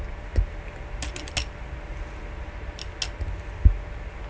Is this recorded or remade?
recorded